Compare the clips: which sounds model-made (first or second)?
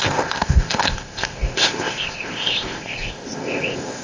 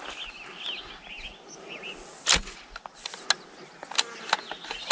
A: first